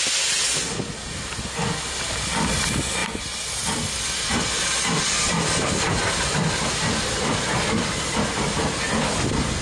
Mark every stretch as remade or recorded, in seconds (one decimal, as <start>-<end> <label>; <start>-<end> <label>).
0.0-9.6 recorded